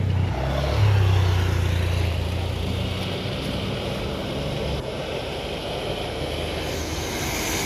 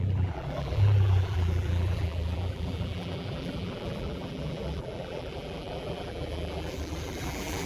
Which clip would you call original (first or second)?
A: first